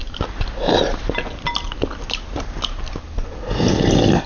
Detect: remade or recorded recorded